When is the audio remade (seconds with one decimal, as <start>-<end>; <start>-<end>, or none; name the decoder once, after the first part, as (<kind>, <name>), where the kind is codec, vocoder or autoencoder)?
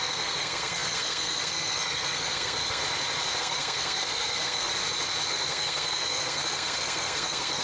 0.0-2.8 (codec, SNAC); 3.4-4.7; 5.3-7.6